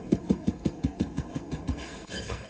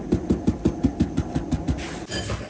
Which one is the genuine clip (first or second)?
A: second